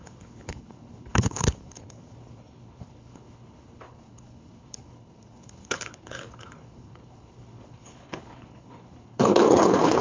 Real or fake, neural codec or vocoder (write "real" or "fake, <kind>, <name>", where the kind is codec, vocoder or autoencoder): fake, codec, HILCodec